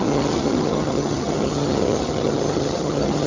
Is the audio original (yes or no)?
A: no